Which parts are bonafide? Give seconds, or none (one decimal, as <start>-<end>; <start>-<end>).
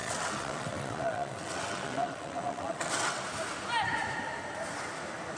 3.2-5.4